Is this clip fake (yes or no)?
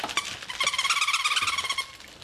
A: no